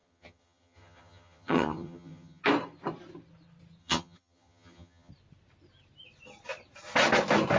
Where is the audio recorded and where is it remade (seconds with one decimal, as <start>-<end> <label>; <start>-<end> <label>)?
0.0-2.4 remade; 2.4-3.8 recorded; 3.8-5.1 remade; 5.1-7.6 recorded